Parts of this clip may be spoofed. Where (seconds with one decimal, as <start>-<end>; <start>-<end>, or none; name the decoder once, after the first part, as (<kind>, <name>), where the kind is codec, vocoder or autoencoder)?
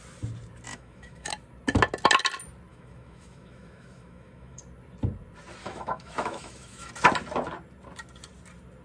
0.7-1.3 (autoencoder, DAC-VAE); 2.7-4.6; 5.6-6.9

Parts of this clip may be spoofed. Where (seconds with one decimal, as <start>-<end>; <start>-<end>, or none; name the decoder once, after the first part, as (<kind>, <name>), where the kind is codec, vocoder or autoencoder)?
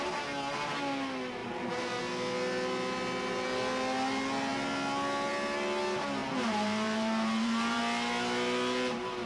1.4-2.0 (vocoder, BigVGAN v2); 6.2-7.8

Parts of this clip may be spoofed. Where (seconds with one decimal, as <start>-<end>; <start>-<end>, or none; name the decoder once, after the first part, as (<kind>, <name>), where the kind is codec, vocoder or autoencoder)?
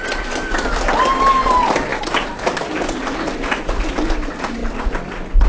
none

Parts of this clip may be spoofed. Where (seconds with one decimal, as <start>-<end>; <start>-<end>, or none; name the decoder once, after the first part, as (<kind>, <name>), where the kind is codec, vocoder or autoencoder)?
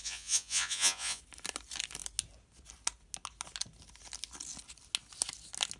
0.0-1.2 (vocoder, Vocos)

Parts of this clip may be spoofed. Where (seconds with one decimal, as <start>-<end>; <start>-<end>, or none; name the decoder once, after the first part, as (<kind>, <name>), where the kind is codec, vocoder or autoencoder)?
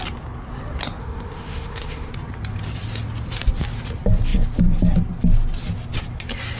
1.0-2.1 (autoencoder, DAC-VAE)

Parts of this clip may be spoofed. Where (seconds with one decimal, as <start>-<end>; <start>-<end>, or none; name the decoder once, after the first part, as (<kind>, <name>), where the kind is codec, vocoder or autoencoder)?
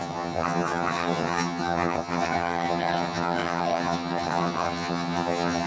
0.0-5.7 (vocoder, HiFi-GAN)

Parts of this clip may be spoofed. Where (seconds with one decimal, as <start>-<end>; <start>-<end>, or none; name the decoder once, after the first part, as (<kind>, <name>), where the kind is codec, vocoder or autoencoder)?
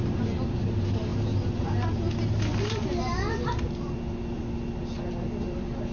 none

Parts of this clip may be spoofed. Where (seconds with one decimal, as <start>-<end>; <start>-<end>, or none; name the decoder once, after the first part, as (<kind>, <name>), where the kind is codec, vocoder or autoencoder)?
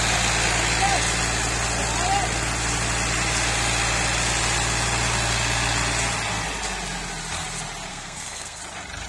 7.9-8.6 (codec, SNAC)